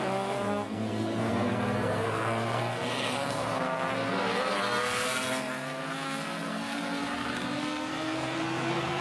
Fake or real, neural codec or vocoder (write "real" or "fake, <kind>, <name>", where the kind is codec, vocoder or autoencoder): fake, codec, SNAC